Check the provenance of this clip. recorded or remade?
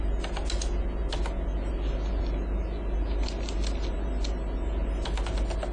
recorded